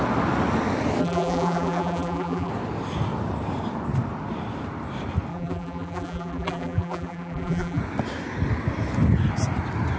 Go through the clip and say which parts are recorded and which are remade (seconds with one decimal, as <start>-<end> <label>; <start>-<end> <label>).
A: 0.0-1.0 recorded; 1.0-2.5 remade; 2.5-5.3 recorded; 5.3-7.8 remade; 7.8-10.0 recorded